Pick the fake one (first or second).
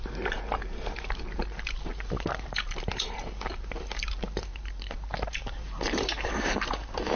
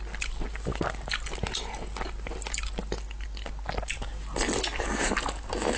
first